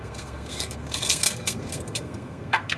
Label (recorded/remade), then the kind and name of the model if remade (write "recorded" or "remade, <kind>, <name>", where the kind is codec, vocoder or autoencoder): remade, codec, SNAC